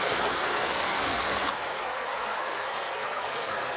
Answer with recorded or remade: remade